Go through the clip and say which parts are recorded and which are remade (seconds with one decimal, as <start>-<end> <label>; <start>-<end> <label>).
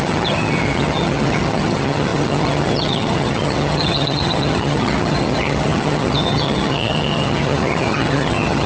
0.0-8.7 remade